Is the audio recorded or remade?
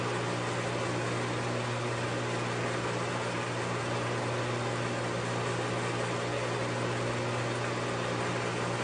recorded